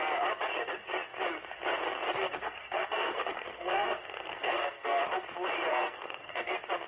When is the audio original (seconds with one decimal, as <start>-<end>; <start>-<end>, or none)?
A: 0.0-2.2; 5.0-5.7; 6.5-6.9